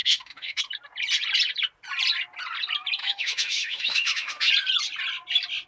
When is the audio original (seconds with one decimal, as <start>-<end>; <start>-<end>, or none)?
0.6-3.0; 4.5-5.7